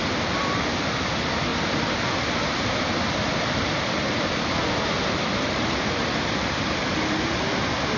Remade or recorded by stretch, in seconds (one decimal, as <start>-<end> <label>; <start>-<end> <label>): 0.0-1.5 recorded; 1.5-6.1 remade; 6.1-8.0 recorded